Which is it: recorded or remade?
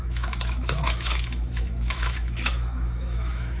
remade